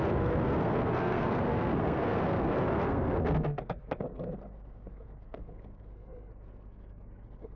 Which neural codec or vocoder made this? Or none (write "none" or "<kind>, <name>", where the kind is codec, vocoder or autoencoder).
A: codec, SNAC